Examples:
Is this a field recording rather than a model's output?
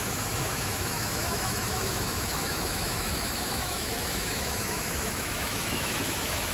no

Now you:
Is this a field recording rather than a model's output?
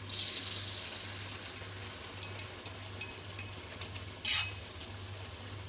yes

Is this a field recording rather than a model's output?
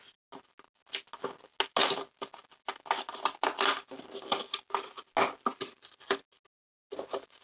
yes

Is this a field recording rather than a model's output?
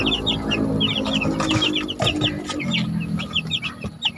yes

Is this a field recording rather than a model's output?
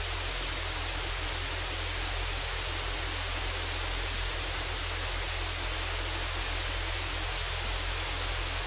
yes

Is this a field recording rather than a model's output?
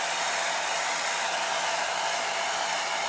yes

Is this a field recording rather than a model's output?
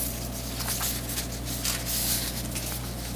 yes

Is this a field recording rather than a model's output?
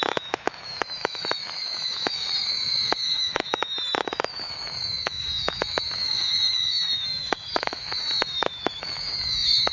no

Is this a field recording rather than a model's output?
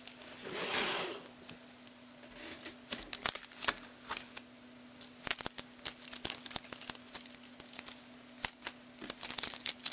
yes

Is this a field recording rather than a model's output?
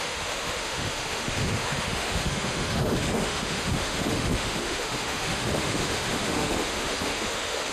no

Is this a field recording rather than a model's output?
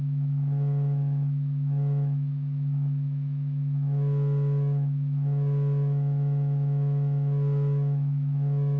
no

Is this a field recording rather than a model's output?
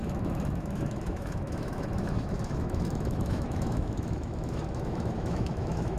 no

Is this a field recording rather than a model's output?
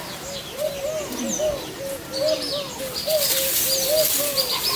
yes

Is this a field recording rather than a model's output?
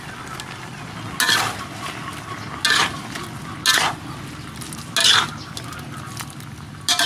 yes